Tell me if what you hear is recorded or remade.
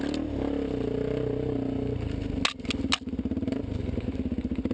recorded